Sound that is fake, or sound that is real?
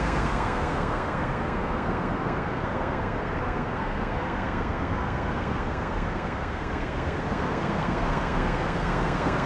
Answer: fake